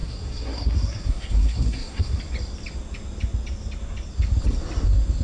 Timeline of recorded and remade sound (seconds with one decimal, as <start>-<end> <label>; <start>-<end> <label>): 0.0-2.2 remade; 2.2-5.2 recorded